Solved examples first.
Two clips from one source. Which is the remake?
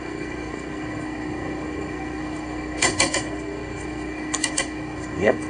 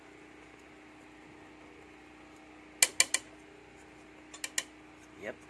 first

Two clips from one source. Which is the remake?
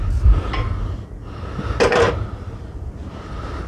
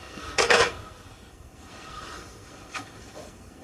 second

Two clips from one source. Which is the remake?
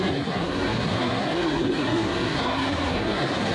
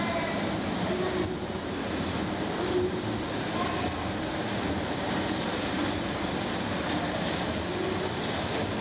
first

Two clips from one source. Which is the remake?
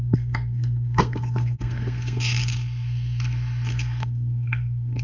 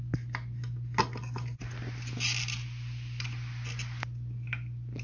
first